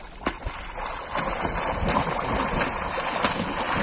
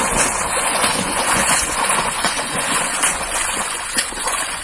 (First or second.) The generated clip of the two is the second